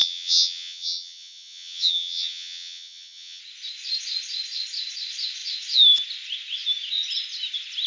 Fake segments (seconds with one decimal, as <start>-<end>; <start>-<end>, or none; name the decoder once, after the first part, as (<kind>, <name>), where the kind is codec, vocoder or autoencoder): 0.0-3.4 (vocoder, HiFi-GAN)